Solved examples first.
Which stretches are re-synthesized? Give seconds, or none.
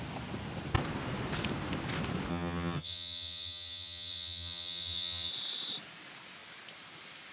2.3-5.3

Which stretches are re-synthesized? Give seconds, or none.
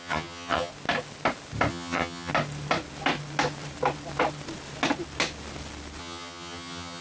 0.0-0.7; 1.7-2.3; 6.0-7.0